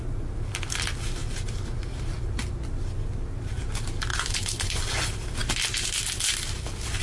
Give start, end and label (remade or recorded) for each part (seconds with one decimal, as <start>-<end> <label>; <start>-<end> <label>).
0.0-4.1 recorded; 4.1-4.8 remade; 4.8-7.0 recorded